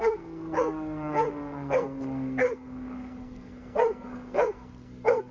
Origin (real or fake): fake